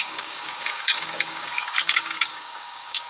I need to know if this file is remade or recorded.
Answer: remade